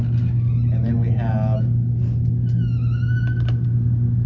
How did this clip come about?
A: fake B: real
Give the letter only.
B